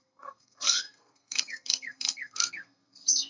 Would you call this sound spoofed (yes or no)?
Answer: yes